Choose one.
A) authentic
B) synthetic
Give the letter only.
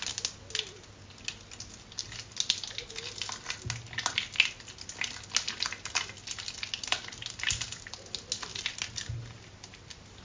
A